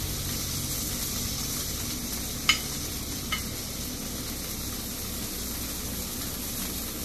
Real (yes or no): yes